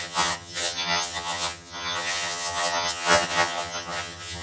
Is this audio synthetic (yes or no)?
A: yes